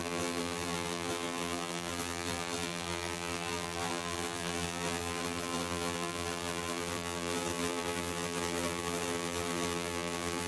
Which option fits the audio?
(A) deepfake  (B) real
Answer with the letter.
A